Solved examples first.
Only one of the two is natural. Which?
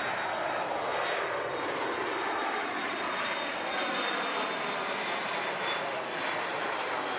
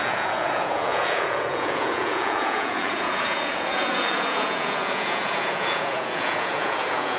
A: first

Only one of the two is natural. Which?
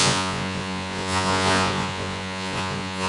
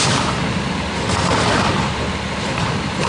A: second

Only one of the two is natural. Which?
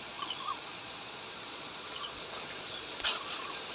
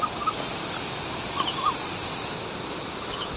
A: second